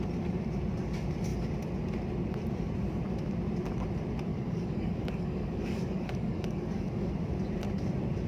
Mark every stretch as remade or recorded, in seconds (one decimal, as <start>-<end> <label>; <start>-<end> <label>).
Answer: 0.0-4.3 recorded; 4.3-7.1 remade; 7.1-8.3 recorded